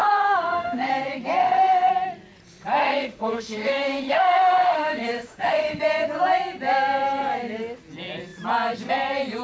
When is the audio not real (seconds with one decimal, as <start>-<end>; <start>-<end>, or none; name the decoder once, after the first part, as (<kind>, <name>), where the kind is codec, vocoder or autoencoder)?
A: 0.0-0.9 (autoencoder, DAC-VAE); 1.4-1.9; 2.8-5.8